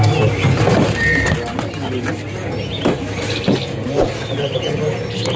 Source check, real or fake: real